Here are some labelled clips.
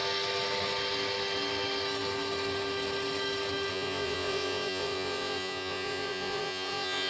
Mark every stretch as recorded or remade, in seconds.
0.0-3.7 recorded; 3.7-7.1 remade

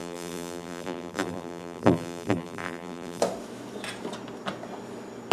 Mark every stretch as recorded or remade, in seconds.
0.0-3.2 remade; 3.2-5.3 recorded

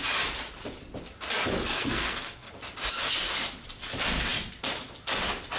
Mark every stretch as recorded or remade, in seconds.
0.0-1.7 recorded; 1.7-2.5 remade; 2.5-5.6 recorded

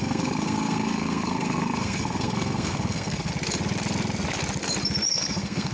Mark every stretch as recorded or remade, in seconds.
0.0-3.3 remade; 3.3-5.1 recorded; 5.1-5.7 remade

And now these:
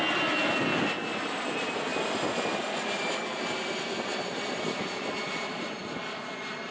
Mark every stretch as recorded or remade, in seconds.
0.0-6.7 recorded

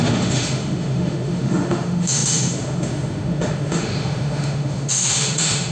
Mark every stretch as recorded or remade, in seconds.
0.0-5.7 remade

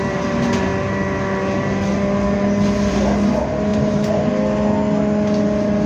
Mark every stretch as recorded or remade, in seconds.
0.0-3.7 recorded; 3.7-4.3 remade; 4.3-5.9 recorded